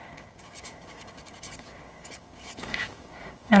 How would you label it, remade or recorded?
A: remade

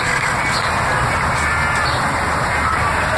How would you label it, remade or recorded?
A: recorded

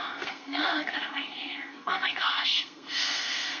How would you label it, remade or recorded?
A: remade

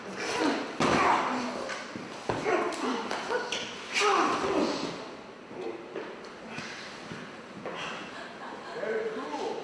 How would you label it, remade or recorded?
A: recorded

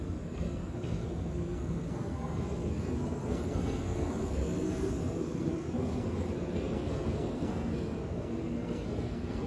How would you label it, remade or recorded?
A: remade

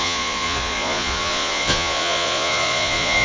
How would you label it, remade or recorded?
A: remade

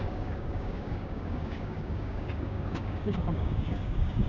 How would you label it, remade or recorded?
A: remade